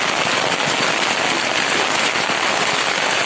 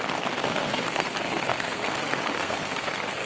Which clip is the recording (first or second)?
first